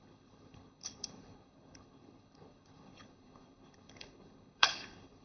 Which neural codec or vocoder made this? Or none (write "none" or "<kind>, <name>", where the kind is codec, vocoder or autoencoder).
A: codec, HILCodec